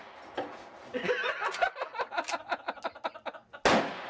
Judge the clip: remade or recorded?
recorded